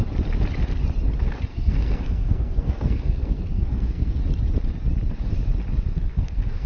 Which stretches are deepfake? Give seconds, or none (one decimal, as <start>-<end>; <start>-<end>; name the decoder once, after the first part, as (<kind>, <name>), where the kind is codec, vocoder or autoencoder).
1.5-4.2 (codec, SNAC); 6.1-6.7